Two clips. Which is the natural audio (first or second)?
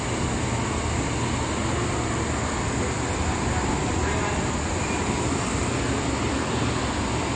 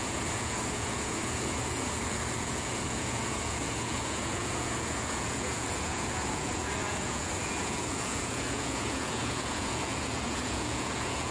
first